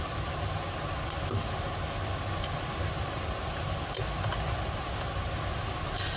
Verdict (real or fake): real